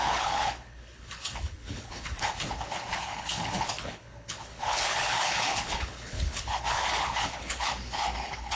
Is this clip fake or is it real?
fake